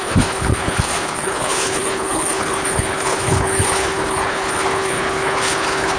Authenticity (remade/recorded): remade